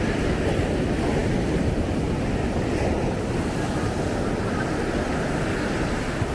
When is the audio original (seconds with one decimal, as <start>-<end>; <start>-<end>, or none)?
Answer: 0.0-6.3